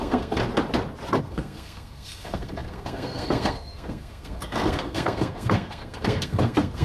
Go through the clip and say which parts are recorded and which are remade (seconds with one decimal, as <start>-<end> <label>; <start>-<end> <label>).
0.0-0.4 remade; 0.4-1.2 recorded; 1.2-6.8 remade